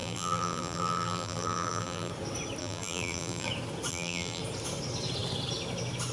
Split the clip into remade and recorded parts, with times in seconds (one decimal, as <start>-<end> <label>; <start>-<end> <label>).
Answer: 0.0-2.1 remade; 2.1-2.6 recorded; 2.6-3.5 remade; 3.5-3.9 recorded; 3.9-4.4 remade; 4.4-6.1 recorded